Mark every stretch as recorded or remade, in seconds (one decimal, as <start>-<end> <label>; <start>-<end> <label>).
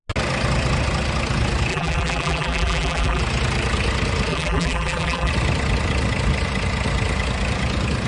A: 0.0-1.7 recorded; 1.7-3.2 remade; 3.2-4.3 recorded; 4.3-5.3 remade; 5.3-8.1 recorded